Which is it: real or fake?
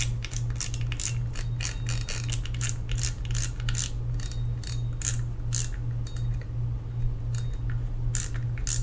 real